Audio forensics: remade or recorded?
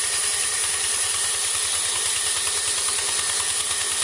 recorded